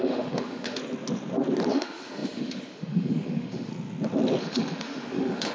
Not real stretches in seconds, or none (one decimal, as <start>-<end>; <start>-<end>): 0.0-0.8; 1.7-3.7; 4.4-5.5